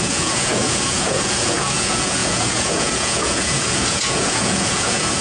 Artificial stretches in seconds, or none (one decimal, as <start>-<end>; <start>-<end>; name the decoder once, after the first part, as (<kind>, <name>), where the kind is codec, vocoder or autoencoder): 0.0-5.2 (vocoder, Vocos)